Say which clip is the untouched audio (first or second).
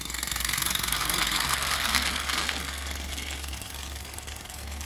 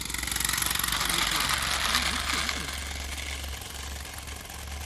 second